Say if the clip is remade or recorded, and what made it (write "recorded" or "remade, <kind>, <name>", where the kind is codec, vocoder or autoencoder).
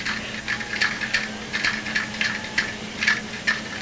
recorded